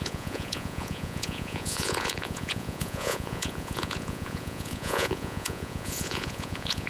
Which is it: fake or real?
fake